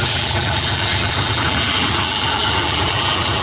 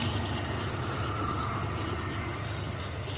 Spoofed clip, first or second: first